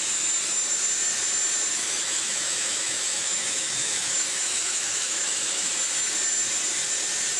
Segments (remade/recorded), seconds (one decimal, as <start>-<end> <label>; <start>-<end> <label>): 0.0-1.7 recorded; 1.7-5.7 remade; 5.7-7.4 recorded